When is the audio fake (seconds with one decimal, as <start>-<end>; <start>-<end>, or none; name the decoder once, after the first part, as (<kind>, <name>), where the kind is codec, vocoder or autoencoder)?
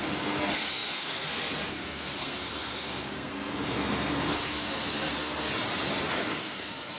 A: 0.0-5.5 (codec, SNAC); 6.1-7.0